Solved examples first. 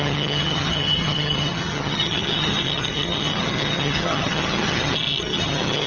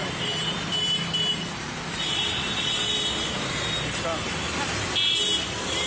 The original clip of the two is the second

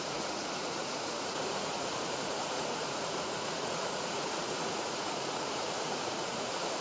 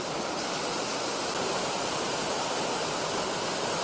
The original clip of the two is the second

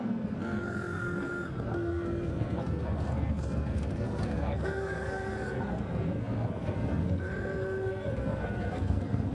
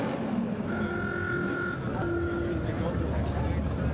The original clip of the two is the second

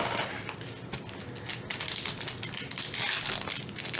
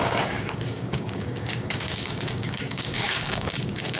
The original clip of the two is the first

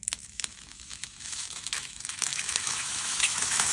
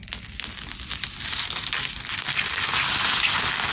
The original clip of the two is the second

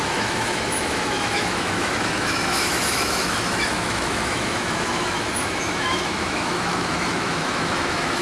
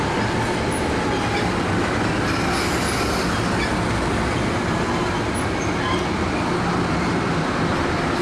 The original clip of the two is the second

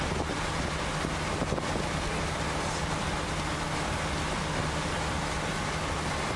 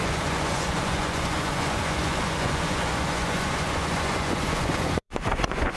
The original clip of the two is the first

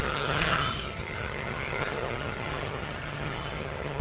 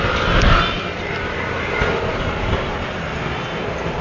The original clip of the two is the second